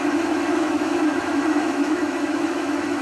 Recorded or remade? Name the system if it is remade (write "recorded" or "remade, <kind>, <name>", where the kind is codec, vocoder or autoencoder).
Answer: remade, autoencoder, DAC-VAE